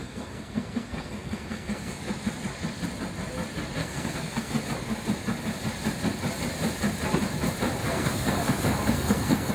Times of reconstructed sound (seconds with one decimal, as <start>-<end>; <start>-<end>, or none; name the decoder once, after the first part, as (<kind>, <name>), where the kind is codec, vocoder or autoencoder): 0.0-2.0 (codec, SNAC); 3.8-4.6; 7.8-9.5